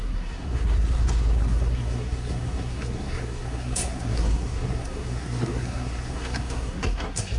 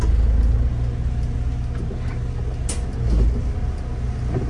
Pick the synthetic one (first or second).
first